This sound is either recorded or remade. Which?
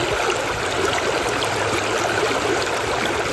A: recorded